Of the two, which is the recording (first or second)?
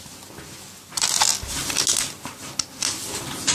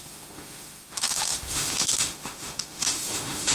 first